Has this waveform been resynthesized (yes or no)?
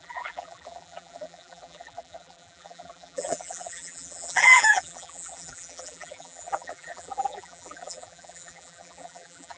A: yes